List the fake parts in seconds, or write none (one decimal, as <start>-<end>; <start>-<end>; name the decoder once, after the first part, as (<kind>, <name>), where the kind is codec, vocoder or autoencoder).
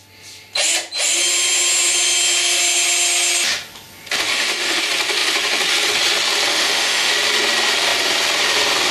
4.3-4.8 (autoencoder, DAC-VAE); 6.5-7.1